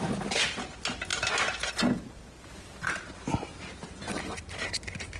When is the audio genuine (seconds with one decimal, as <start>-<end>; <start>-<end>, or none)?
0.0-5.2